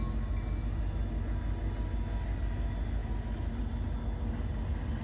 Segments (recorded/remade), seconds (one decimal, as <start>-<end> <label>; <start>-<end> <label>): 0.0-5.0 recorded